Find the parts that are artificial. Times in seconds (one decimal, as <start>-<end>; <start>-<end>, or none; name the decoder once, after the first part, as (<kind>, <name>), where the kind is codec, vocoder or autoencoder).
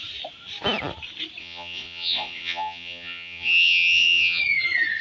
1.4-4.4 (vocoder, Vocos)